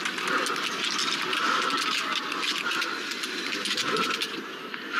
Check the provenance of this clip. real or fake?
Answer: real